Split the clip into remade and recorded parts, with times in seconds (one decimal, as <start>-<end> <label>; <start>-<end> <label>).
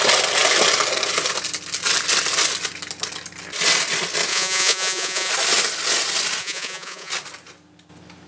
0.0-4.3 recorded; 4.3-5.3 remade; 5.3-6.4 recorded; 6.4-7.1 remade; 7.1-8.3 recorded